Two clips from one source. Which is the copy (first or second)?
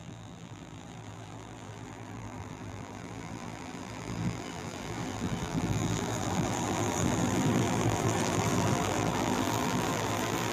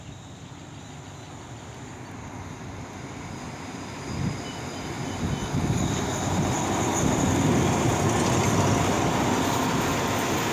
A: first